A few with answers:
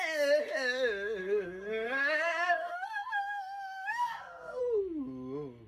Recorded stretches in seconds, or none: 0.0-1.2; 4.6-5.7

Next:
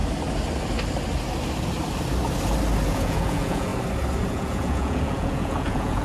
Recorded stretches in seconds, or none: 0.0-2.9; 3.7-4.3